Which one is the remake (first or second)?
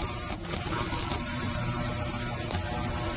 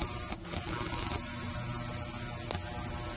first